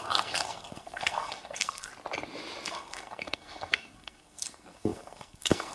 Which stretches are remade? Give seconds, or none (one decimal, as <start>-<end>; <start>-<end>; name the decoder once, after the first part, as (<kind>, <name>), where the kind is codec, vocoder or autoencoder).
0.0-1.9 (codec, SNAC); 2.7-5.7